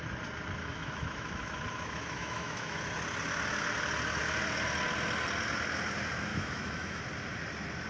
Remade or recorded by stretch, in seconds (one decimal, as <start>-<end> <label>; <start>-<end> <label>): 0.0-0.6 recorded; 0.6-2.8 remade; 2.8-6.3 recorded; 6.3-7.0 remade; 7.0-7.9 recorded